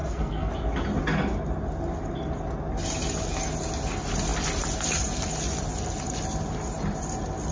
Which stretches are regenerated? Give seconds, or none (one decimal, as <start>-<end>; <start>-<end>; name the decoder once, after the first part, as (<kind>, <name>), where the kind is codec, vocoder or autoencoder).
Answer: 0.0-0.5 (codec, SNAC)